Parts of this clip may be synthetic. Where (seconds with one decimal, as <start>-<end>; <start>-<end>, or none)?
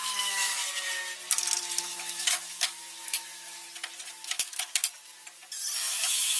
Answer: 0.0-0.6; 1.8-3.6; 4.1-4.8; 5.8-6.4